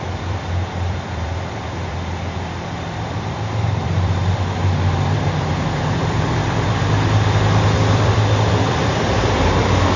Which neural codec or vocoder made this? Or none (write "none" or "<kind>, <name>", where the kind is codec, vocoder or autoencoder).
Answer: vocoder, BigVGAN v2